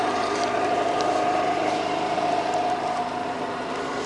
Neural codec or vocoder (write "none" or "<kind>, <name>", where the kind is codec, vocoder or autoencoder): vocoder, BigVGAN v2